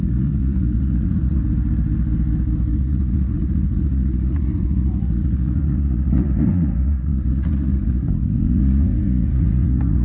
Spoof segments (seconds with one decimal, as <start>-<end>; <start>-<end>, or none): 0.0-1.4; 2.8-10.0